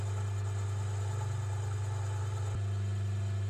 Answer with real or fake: real